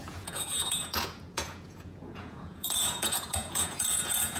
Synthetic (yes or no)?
yes